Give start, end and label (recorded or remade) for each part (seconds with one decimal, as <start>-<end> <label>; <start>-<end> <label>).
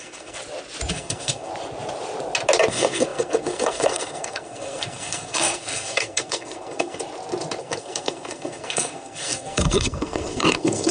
0.0-0.4 remade; 0.4-0.9 recorded; 0.9-1.5 remade; 1.5-2.7 recorded; 2.7-7.0 remade; 7.0-7.6 recorded; 7.6-10.9 remade